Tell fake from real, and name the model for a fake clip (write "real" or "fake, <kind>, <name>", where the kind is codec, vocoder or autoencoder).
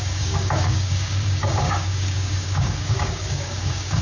fake, codec, DAC